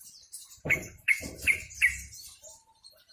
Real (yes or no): no